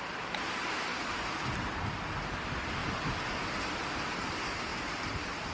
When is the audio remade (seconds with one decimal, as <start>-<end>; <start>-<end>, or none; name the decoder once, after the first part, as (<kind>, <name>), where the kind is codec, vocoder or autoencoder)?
2.8-3.9 (vocoder, BigVGAN v2); 4.7-5.5